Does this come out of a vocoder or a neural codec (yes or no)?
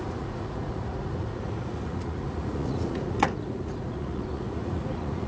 yes